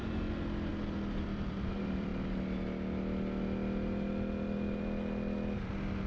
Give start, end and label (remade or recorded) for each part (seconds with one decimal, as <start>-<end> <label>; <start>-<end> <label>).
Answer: 0.0-0.7 recorded; 0.7-2.1 remade; 2.1-6.1 recorded

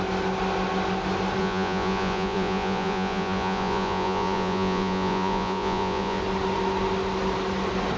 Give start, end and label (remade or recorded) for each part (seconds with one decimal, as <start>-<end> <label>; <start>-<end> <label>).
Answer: 0.0-1.4 recorded; 1.4-6.2 remade; 6.2-8.0 recorded

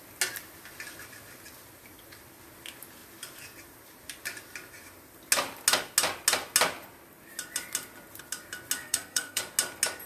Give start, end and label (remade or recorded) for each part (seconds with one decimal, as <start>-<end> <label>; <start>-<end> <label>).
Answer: 0.0-8.8 recorded; 8.8-9.4 remade; 9.4-10.1 recorded

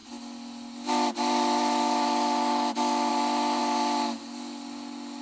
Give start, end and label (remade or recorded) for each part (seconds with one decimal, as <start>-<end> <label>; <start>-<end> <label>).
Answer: 0.0-5.2 recorded